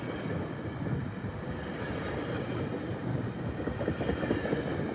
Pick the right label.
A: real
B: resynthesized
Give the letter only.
A